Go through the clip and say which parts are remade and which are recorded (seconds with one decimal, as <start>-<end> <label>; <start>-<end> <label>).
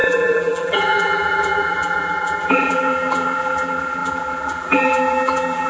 0.0-5.7 remade